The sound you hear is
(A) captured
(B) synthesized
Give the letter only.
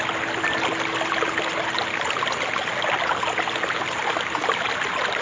A